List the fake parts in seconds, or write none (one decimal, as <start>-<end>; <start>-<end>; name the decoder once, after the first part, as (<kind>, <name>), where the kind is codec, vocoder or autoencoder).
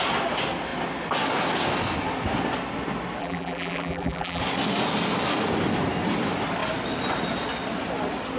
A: 3.2-4.4 (vocoder, BigVGAN v2)